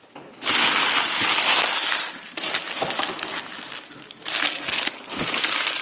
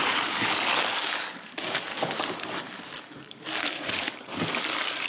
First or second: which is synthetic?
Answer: second